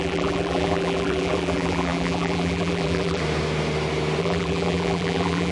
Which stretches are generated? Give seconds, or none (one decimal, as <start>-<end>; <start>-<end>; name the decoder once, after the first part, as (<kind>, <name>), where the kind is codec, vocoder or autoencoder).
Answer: 0.0-3.2 (vocoder, BigVGAN v2); 4.2-5.5